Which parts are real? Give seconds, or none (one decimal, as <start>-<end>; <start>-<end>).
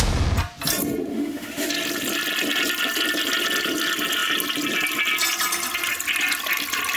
0.0-1.1; 1.7-7.0